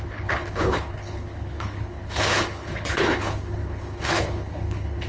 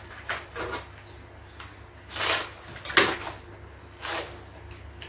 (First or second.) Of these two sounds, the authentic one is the second